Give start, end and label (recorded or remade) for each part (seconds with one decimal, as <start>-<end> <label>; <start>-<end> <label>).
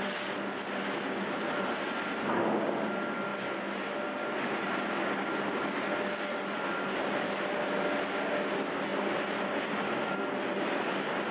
0.0-11.3 recorded